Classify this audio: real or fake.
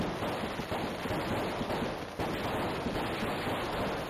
real